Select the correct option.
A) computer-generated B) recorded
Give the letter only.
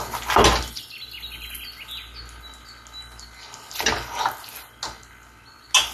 B